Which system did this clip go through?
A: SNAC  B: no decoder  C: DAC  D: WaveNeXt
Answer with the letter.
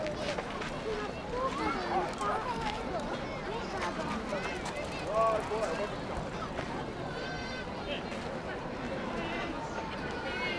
B